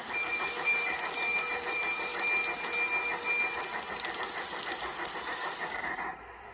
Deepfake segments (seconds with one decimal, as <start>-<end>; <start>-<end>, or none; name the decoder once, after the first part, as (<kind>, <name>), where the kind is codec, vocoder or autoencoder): 0.0-2.1 (vocoder, BigVGAN v2); 5.2-6.5